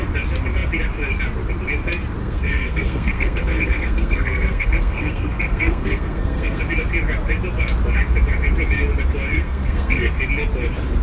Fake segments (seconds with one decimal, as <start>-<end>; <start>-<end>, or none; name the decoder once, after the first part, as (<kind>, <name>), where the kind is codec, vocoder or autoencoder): 2.2-6.6 (codec, SNAC); 9.3-10.1